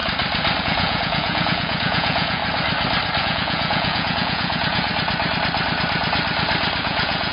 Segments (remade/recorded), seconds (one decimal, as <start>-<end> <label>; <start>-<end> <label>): 0.0-0.6 recorded; 0.6-2.4 remade; 2.4-3.2 recorded; 3.2-4.9 remade; 4.9-6.8 recorded; 6.8-7.3 remade